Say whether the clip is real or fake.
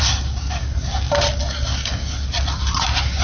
real